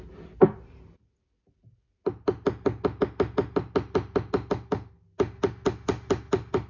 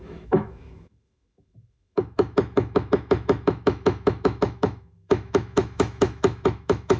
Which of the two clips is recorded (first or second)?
first